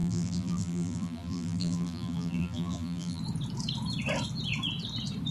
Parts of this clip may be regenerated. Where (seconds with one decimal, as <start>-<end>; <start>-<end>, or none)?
0.0-3.2